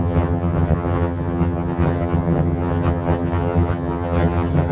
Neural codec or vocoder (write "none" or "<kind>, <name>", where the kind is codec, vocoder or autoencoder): vocoder, HiFi-GAN